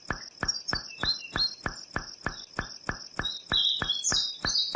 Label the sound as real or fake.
real